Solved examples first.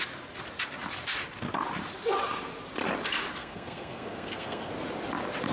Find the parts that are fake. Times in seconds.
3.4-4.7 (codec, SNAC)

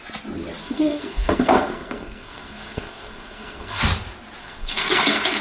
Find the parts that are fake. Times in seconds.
0.6-3.8 (codec, SNAC); 4.4-5.4

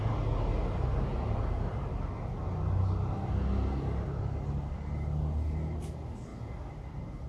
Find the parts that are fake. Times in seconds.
none

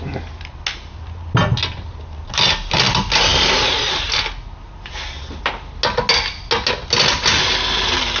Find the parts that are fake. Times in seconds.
none

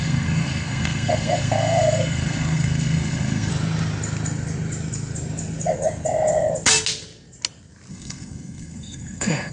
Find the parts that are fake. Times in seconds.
0.0-3.5 (codec, SNAC); 7.9-9.5

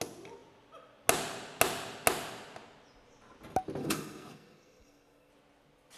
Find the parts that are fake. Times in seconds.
3.8-5.3 (codec, SNAC)